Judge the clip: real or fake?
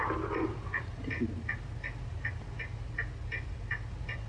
real